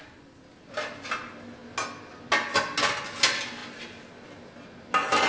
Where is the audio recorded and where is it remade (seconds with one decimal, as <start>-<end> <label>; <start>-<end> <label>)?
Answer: 0.0-5.3 recorded